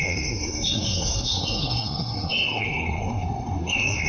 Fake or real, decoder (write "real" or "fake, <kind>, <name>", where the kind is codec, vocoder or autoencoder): fake, codec, SNAC